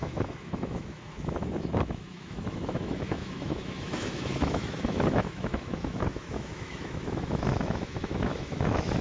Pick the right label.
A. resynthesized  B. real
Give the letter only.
A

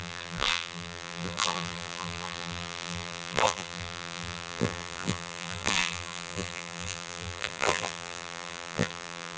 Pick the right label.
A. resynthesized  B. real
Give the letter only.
A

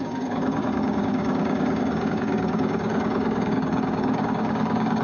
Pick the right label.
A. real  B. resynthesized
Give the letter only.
B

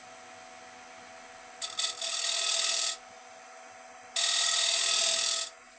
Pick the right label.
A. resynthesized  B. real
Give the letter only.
B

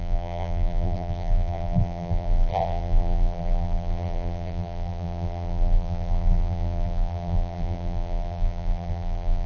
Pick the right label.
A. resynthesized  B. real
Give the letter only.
A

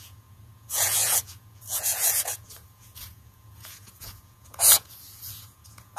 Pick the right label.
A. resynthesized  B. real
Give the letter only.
A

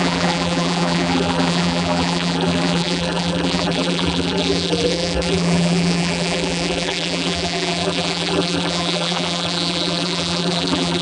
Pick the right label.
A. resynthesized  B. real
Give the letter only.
A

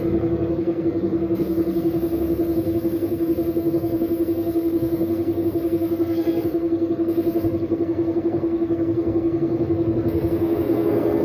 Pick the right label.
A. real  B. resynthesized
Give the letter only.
B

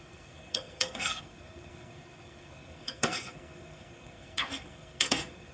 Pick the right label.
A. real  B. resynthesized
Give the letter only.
B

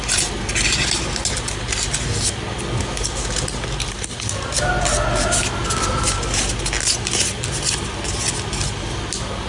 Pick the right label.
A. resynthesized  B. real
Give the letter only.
B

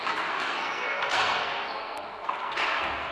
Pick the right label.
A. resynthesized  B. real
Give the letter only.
A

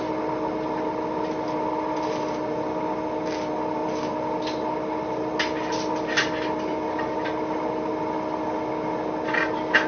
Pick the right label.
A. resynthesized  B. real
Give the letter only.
B